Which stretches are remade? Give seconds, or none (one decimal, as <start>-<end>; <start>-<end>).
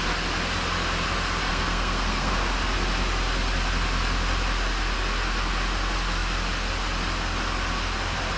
1.5-2.3